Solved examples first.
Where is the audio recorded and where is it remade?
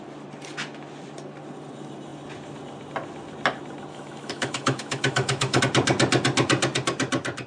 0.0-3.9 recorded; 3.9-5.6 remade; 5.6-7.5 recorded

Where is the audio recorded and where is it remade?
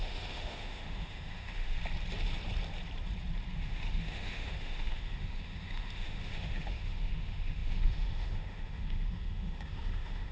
0.0-1.8 remade; 1.8-3.6 recorded; 3.6-10.3 remade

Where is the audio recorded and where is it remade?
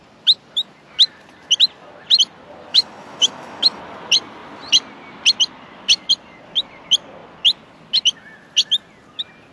0.0-2.7 recorded; 2.7-3.8 remade; 3.8-9.5 recorded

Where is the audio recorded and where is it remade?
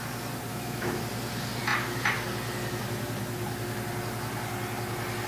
0.0-0.5 recorded; 0.5-1.0 remade; 1.0-5.3 recorded